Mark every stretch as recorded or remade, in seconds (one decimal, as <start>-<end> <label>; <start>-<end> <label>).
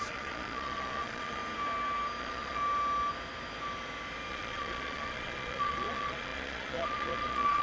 0.0-1.4 remade; 1.4-2.2 recorded; 2.2-2.6 remade; 2.6-4.3 recorded; 4.3-7.6 remade